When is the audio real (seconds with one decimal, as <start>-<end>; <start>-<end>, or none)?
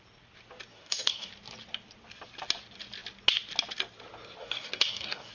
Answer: 0.0-0.7; 1.3-4.4